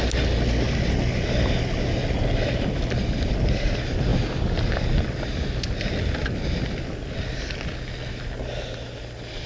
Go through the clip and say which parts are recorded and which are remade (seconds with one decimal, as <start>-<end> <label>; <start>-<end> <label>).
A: 0.0-9.5 recorded